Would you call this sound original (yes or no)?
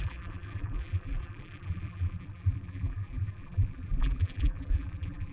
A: no